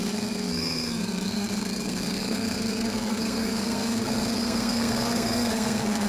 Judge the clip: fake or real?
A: fake